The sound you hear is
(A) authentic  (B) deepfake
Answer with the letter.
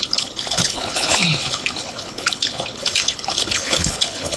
B